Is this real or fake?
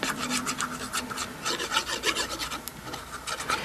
real